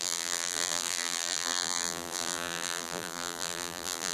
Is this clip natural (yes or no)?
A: no